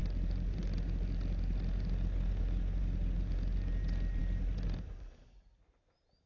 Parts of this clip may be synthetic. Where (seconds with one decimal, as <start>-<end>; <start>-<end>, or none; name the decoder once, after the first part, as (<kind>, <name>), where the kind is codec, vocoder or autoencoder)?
none